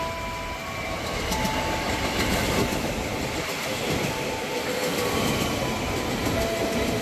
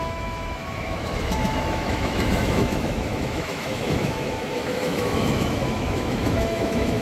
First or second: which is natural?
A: first